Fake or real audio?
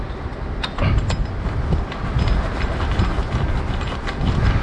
real